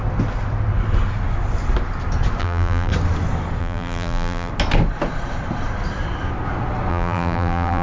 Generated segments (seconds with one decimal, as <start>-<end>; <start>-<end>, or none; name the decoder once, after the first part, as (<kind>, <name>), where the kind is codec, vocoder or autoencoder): 2.4-2.9 (vocoder, BigVGAN v2); 3.6-4.5; 6.9-7.8